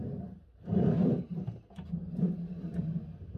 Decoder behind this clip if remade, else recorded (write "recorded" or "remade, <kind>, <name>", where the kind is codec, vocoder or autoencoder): remade, vocoder, BigVGAN v2